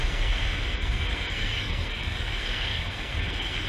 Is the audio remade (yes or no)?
yes